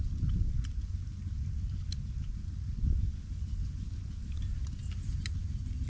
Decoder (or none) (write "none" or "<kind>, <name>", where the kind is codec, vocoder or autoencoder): none